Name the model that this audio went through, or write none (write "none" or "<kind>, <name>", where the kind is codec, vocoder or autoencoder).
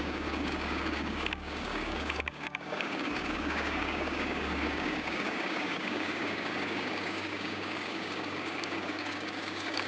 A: codec, DAC